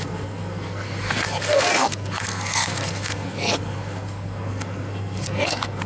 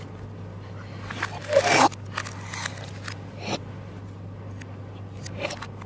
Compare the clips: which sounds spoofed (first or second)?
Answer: first